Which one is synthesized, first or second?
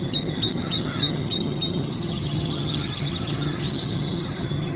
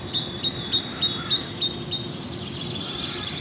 first